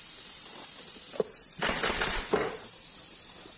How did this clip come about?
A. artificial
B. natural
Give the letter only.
A